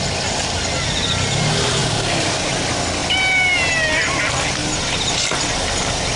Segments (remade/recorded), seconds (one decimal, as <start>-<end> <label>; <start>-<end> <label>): 0.0-1.8 recorded; 1.8-2.5 remade; 2.5-6.2 recorded